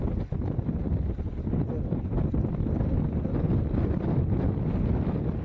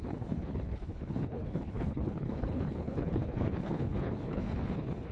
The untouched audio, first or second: first